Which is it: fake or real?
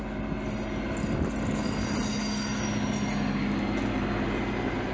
real